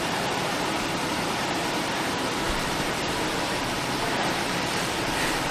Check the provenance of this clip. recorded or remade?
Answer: remade